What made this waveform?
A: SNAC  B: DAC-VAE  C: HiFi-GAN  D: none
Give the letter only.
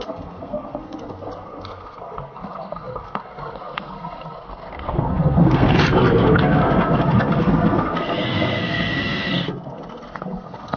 A